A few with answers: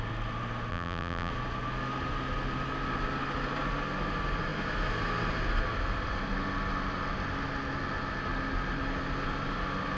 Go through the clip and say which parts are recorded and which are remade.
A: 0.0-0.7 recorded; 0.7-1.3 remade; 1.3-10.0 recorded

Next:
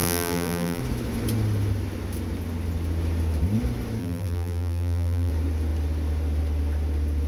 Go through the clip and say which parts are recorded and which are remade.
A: 0.0-0.8 remade; 0.8-4.0 recorded; 4.0-5.3 remade; 5.3-7.3 recorded

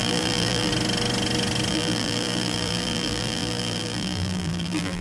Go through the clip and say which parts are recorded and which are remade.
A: 0.0-0.7 remade; 0.7-1.7 recorded; 1.7-5.0 remade

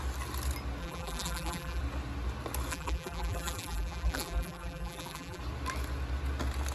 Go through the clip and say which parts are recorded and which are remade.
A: 0.0-0.8 recorded; 0.8-1.8 remade; 1.8-2.7 recorded; 2.7-5.4 remade; 5.4-6.7 recorded

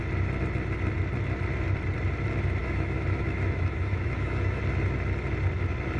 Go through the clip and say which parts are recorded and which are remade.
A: 0.0-2.6 recorded; 2.6-4.6 remade; 4.6-6.0 recorded

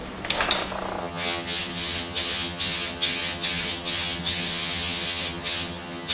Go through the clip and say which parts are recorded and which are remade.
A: 0.0-1.0 recorded; 1.0-6.1 remade

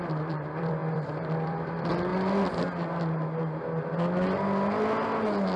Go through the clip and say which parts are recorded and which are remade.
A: 0.0-2.1 remade; 2.1-5.6 recorded